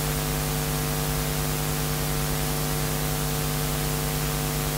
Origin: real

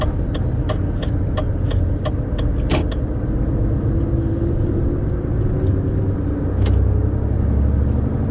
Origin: real